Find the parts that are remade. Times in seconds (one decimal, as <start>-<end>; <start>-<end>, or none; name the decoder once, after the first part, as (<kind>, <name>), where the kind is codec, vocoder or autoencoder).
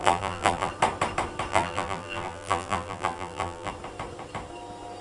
0.0-0.7 (vocoder, BigVGAN v2); 1.5-3.7